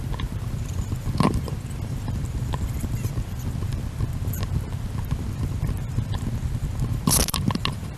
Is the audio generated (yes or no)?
yes